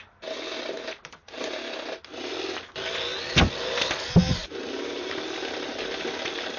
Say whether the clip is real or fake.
real